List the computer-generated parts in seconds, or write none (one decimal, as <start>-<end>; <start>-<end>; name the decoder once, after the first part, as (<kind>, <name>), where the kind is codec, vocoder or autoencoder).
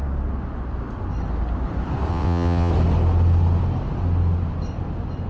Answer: 2.1-2.7 (vocoder, WaveNeXt)